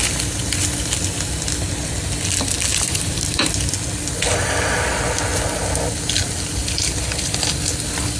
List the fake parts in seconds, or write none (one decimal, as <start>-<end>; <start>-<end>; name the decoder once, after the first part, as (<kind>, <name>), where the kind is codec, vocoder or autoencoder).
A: 2.7-3.5 (vocoder, BigVGAN v2)